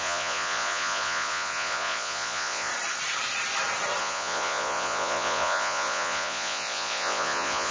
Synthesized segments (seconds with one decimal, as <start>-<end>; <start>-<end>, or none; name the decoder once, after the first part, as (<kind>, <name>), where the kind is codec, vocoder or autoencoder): 0.0-2.7 (vocoder, Vocos); 4.0-7.7